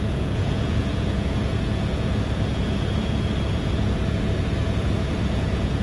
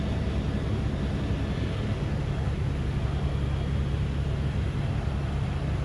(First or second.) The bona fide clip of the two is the second